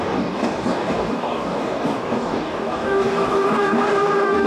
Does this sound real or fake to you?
fake